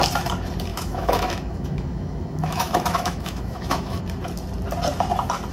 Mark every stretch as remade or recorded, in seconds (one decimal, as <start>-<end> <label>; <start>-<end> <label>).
0.0-0.7 recorded; 0.7-4.0 remade; 4.0-5.5 recorded